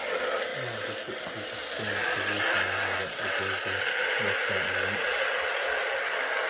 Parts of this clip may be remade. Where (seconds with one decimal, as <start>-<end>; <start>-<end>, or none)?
none

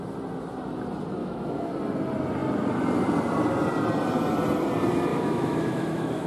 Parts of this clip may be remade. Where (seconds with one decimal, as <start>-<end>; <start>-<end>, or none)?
1.2-1.7; 5.1-6.3

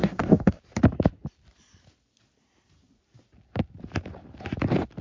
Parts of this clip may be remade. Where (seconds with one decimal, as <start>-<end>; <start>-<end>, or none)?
0.0-0.6